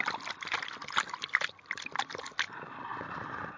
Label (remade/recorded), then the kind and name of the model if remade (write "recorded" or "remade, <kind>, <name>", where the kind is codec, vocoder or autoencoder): recorded